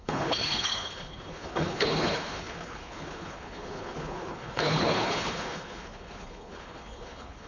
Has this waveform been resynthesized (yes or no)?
yes